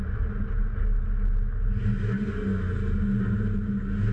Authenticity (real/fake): real